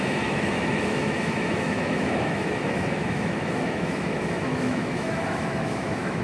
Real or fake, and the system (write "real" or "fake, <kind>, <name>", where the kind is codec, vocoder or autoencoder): fake, autoencoder, DAC-VAE